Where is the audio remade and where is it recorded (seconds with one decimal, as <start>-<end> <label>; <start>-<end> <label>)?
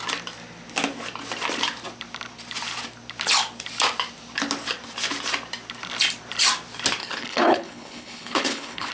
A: 0.0-7.0 recorded; 7.0-8.9 remade